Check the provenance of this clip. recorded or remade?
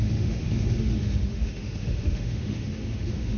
remade